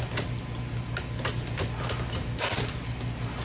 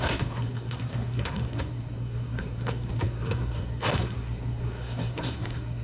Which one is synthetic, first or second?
second